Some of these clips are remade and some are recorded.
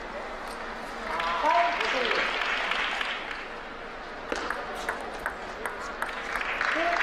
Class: recorded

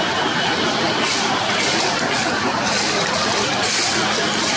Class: recorded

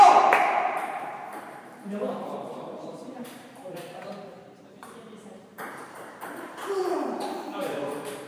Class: remade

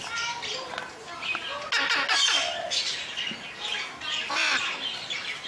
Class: recorded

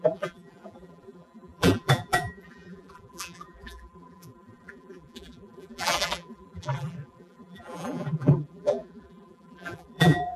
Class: remade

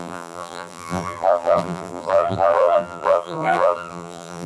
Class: remade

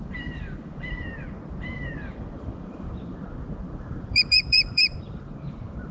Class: remade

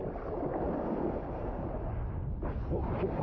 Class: recorded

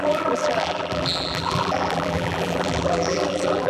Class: remade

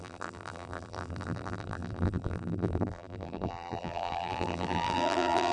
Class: remade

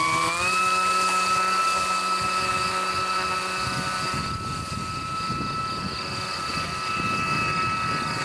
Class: recorded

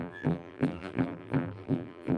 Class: remade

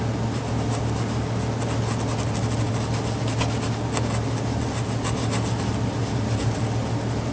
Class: recorded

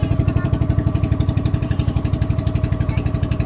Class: remade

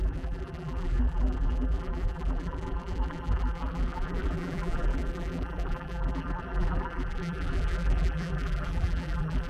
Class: remade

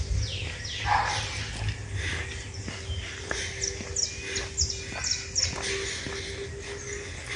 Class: recorded